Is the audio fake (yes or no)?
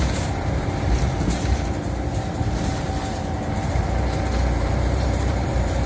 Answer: yes